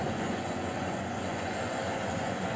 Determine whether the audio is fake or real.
fake